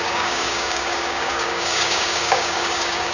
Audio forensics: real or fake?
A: fake